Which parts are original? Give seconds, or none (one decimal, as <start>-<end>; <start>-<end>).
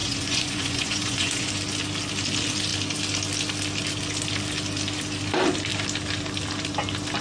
1.5-7.2